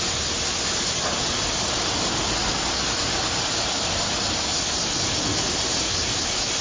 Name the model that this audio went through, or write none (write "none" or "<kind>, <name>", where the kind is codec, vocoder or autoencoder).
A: none